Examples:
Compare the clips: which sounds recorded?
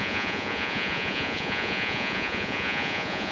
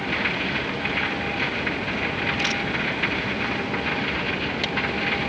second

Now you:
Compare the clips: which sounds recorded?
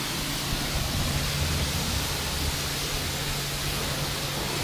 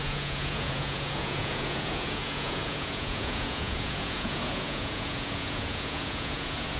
first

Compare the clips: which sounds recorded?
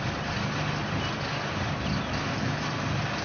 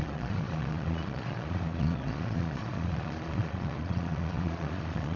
first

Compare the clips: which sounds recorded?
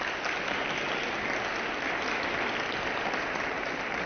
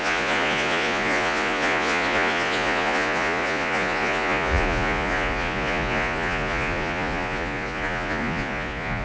first